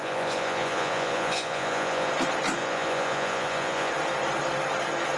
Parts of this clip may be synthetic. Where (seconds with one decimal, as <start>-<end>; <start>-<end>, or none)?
0.0-2.1; 2.6-3.9